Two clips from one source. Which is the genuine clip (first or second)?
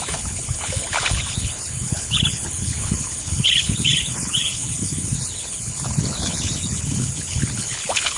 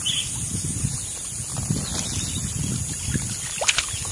second